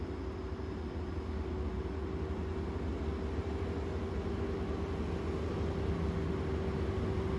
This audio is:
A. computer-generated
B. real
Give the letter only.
B